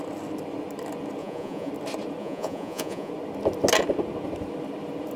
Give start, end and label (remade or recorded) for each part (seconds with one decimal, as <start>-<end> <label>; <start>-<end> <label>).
0.0-1.2 recorded; 1.2-1.7 remade; 1.7-2.2 recorded; 2.2-3.1 remade; 3.1-5.2 recorded